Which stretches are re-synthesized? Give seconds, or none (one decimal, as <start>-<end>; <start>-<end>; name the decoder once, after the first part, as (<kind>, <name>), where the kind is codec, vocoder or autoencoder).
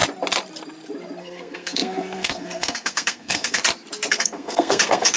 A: 1.2-3.6 (codec, SNAC); 4.1-5.2